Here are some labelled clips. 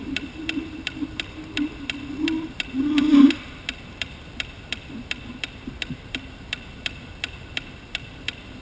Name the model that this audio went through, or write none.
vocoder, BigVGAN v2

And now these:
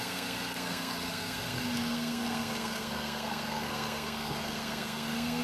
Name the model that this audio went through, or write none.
codec, SNAC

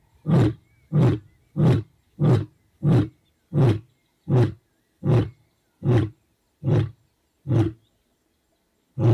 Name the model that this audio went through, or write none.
none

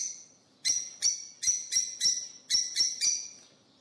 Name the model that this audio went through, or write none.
none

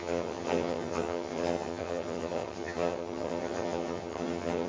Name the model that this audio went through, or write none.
vocoder, HiFi-GAN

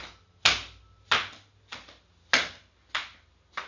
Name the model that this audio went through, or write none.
none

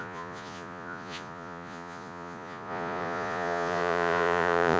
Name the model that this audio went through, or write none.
vocoder, Vocos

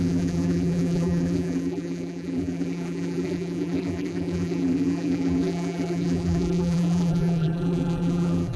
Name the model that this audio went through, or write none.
vocoder, BigVGAN v2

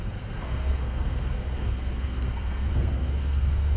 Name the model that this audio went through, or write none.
codec, SNAC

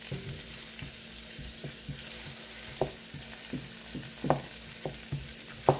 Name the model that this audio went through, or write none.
none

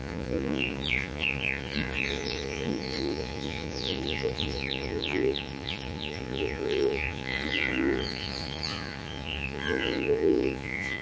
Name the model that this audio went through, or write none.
vocoder, Vocos